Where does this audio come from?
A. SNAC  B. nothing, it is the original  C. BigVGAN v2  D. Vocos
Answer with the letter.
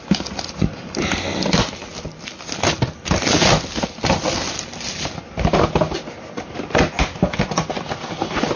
B